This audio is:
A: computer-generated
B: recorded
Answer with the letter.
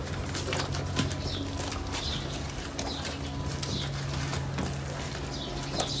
B